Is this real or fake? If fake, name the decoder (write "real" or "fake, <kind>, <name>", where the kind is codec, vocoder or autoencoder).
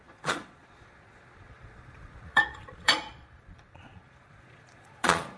fake, vocoder, Vocos